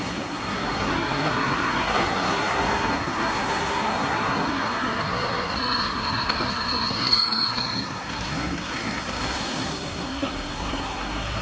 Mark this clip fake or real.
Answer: fake